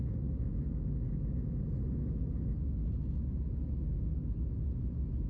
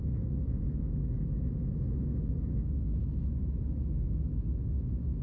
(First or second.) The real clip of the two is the first